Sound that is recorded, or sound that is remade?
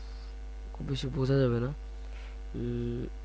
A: recorded